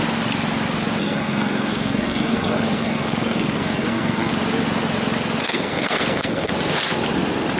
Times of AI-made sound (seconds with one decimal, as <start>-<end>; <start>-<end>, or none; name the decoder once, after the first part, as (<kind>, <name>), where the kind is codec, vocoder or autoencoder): 1.0-4.3 (codec, SNAC); 5.4-6.5